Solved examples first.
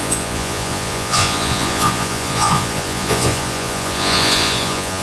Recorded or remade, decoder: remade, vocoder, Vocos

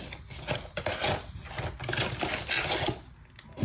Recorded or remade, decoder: recorded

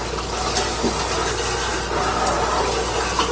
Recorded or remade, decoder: recorded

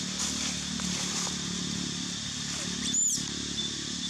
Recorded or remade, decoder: recorded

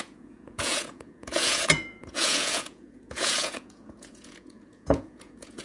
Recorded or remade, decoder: remade, vocoder, Vocos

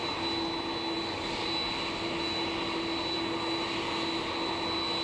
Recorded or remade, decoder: recorded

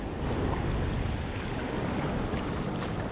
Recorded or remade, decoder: recorded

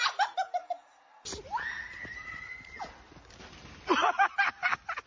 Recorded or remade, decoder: recorded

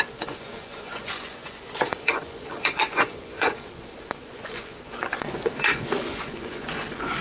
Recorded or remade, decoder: remade, vocoder, Vocos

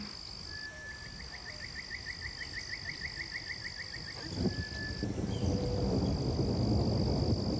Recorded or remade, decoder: recorded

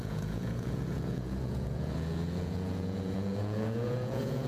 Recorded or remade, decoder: remade, vocoder, Vocos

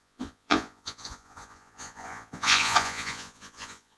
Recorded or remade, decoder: remade, vocoder, Vocos